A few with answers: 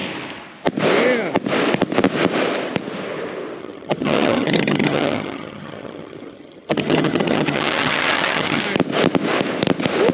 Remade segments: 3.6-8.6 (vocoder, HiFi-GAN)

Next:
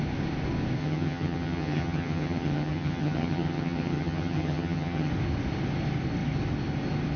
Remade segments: 0.8-5.1 (vocoder, HiFi-GAN)